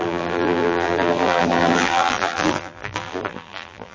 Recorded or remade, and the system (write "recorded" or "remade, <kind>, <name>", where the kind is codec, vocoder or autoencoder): remade, vocoder, BigVGAN v2